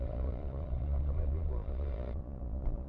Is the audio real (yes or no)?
no